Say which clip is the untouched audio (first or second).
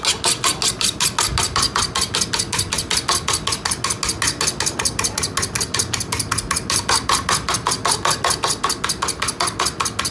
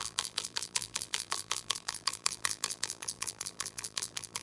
first